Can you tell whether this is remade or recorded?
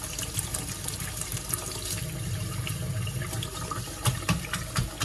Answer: recorded